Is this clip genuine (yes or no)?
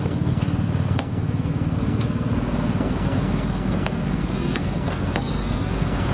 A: no